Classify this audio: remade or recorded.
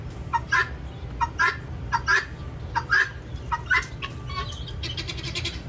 recorded